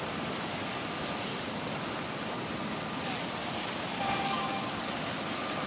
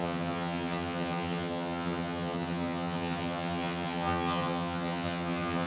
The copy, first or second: second